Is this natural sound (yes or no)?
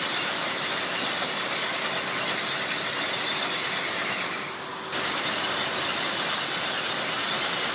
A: yes